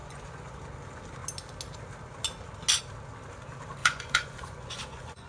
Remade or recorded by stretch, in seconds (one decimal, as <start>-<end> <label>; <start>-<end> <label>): 0.0-0.6 remade; 0.6-3.8 recorded; 3.8-5.3 remade